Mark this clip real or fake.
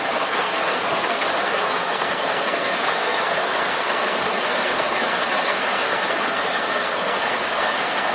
fake